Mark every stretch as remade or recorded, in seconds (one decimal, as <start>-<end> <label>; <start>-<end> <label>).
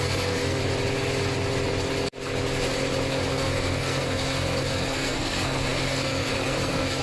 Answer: 0.0-0.6 remade; 0.6-3.3 recorded; 3.3-7.0 remade